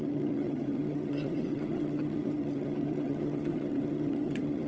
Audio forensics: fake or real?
fake